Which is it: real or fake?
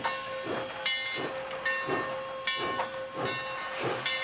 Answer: real